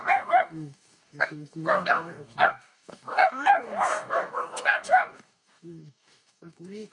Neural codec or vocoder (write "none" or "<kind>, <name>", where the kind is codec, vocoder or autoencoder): codec, DAC